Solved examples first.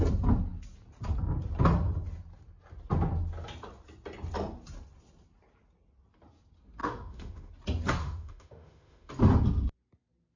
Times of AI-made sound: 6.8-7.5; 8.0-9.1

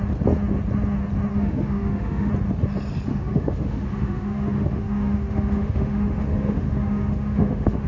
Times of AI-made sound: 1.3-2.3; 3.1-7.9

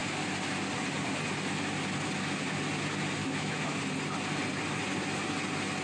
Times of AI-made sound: 3.2-3.8

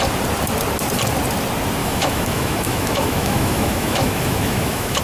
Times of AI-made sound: 1.8-5.0